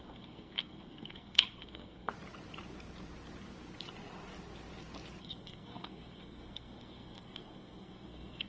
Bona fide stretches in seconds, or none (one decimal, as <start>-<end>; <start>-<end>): 2.1-5.2